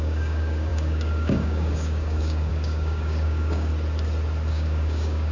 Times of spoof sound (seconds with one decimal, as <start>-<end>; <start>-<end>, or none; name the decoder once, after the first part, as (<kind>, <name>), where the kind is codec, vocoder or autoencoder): 0.0-3.7 (codec, DAC); 4.5-5.3